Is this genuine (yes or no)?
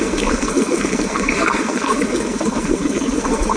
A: no